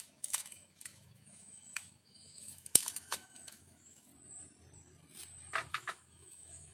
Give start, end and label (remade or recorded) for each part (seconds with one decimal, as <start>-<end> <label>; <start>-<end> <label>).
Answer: 0.0-4.1 remade; 4.1-5.7 recorded; 5.7-6.7 remade